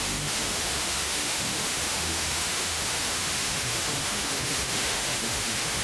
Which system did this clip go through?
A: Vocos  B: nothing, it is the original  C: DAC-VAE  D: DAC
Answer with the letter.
C